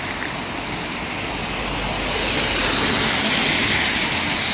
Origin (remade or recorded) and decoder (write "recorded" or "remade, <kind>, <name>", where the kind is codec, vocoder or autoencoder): recorded